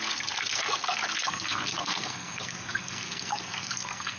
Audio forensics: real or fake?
fake